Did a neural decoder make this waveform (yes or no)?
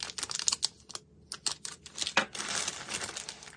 no